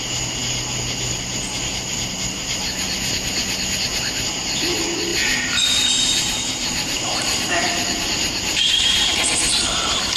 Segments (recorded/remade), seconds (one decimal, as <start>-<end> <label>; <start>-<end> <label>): 0.0-5.1 recorded; 5.1-9.6 remade; 9.6-10.2 recorded